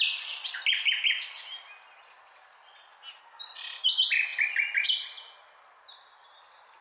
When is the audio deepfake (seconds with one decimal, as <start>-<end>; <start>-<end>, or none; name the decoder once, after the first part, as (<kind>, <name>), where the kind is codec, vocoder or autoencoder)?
none